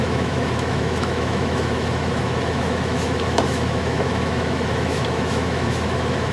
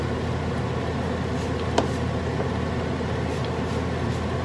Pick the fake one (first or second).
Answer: first